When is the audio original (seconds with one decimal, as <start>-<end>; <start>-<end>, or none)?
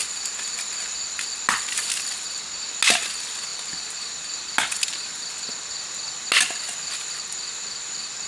0.0-8.3